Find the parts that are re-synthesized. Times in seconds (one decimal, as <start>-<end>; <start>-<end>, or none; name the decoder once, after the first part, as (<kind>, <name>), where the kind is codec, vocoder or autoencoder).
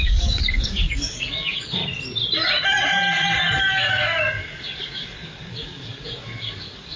0.0-1.8 (codec, DAC); 3.7-7.0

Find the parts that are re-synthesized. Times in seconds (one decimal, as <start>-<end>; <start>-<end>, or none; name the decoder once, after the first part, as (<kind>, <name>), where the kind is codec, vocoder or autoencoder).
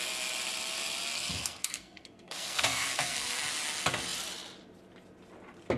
1.1-3.4 (codec, SNAC)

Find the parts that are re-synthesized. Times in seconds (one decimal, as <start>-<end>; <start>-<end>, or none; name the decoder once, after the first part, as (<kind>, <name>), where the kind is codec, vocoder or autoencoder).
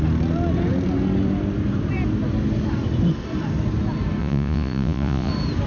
4.2-5.3 (vocoder, Vocos)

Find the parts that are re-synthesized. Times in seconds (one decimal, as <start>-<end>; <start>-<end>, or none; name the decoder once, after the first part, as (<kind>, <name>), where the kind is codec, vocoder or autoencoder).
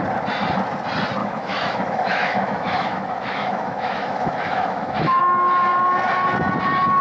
1.2-5.2 (autoencoder, DAC-VAE)